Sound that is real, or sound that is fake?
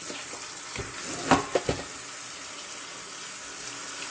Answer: real